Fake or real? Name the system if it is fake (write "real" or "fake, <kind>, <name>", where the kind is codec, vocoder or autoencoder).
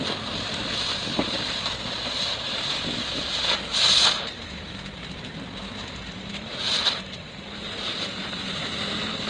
fake, vocoder, BigVGAN v2